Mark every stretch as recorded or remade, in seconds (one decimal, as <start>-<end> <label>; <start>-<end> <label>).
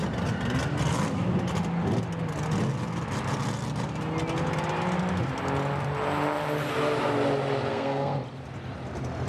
0.0-7.7 recorded; 7.7-8.2 remade; 8.2-9.3 recorded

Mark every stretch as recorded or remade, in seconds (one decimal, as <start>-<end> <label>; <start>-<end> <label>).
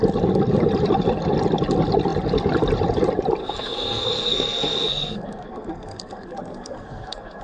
0.0-3.4 recorded; 3.4-7.4 remade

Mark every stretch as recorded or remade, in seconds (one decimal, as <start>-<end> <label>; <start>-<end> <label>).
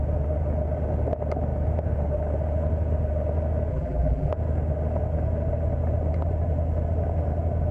0.0-3.7 recorded; 3.7-4.3 remade; 4.3-7.7 recorded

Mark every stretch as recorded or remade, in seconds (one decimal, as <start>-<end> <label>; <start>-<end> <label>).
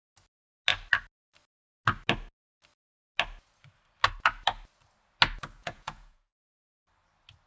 0.0-5.6 recorded; 5.6-6.8 remade; 6.8-7.5 recorded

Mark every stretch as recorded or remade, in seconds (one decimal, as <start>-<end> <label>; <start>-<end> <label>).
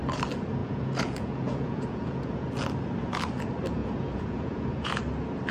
0.0-0.6 recorded; 0.6-2.5 remade; 2.5-3.8 recorded; 3.8-5.0 remade; 5.0-5.5 recorded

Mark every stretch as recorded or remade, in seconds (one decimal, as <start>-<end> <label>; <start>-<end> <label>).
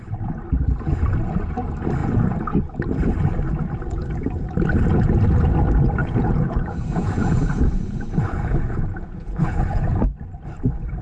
0.0-2.0 recorded; 2.0-2.6 remade; 2.6-6.0 recorded; 6.0-10.0 remade; 10.0-11.0 recorded